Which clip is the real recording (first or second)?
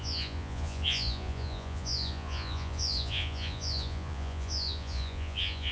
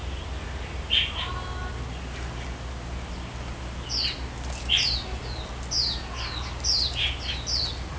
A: second